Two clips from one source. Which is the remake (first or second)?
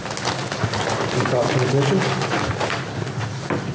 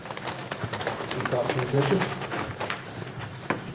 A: second